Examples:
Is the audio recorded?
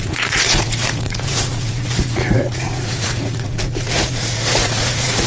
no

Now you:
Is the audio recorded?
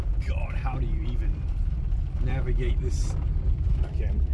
no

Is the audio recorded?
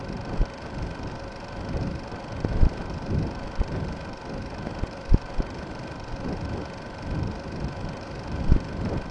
yes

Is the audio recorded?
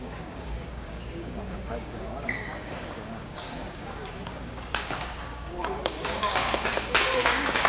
no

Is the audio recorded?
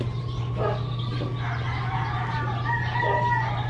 yes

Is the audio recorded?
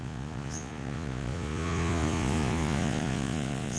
no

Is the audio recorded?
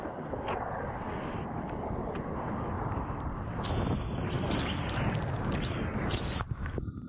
yes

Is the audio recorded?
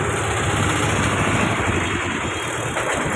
yes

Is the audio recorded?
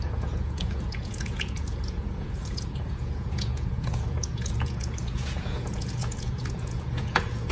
no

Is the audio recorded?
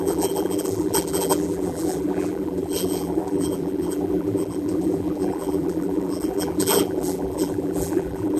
no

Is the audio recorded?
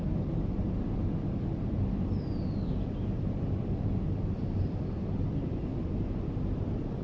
yes